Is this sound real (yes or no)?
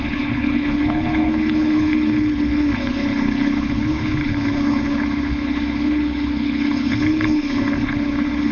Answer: no